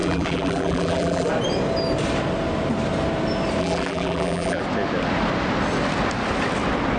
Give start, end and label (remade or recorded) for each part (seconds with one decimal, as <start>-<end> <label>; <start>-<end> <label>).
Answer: 0.0-1.3 remade; 1.3-3.6 recorded; 3.6-4.6 remade; 4.6-7.0 recorded